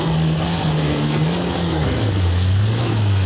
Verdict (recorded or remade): remade